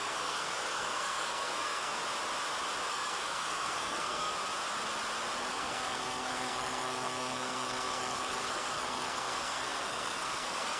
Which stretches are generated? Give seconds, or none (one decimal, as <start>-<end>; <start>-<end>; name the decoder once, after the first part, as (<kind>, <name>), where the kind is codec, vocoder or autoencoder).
0.0-2.0 (codec, SNAC); 2.9-4.3; 5.5-10.8